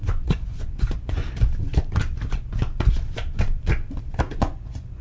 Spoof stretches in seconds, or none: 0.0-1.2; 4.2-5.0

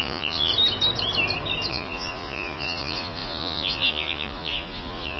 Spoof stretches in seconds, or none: 0.0-0.5; 1.7-5.2